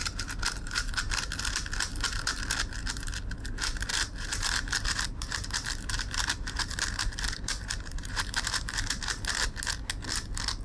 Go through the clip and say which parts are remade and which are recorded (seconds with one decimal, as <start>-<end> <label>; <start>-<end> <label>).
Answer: 0.0-0.9 remade; 0.9-3.9 recorded; 3.9-9.0 remade; 9.0-10.6 recorded

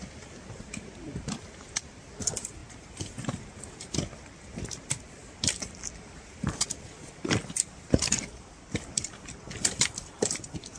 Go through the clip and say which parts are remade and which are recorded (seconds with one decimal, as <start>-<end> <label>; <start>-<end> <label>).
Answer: 0.0-2.6 remade; 2.6-4.6 recorded; 4.6-10.8 remade

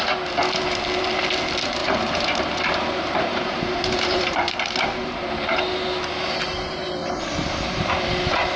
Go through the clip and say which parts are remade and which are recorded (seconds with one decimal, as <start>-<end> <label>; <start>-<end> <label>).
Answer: 0.0-1.8 recorded; 1.8-5.3 remade; 5.3-7.0 recorded; 7.0-8.1 remade; 8.1-8.6 recorded

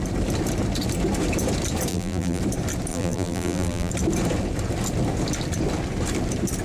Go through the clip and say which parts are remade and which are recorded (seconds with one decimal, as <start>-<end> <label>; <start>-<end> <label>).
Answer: 0.0-1.9 recorded; 1.9-2.4 remade; 2.4-2.9 recorded; 2.9-3.9 remade; 3.9-6.6 recorded

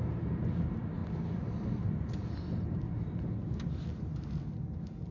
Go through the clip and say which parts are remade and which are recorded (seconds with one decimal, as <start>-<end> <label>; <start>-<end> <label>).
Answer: 0.0-1.0 recorded; 1.0-1.6 remade; 1.6-5.1 recorded

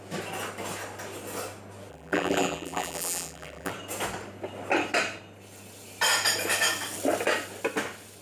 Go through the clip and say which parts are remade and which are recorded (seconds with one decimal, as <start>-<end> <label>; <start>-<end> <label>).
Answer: 0.0-1.9 recorded; 1.9-3.7 remade; 3.7-8.2 recorded